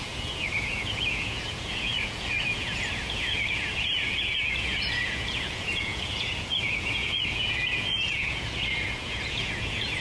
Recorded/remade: remade